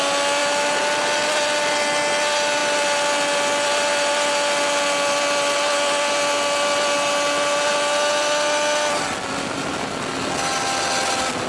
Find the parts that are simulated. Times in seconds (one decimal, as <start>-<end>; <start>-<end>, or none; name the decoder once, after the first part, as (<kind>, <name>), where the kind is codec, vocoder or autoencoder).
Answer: none